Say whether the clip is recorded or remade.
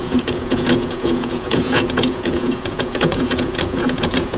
remade